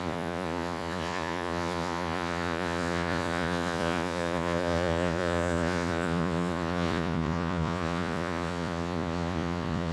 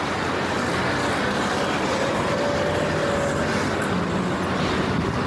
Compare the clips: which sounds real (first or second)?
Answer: second